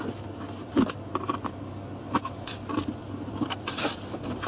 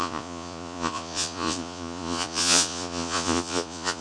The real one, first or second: first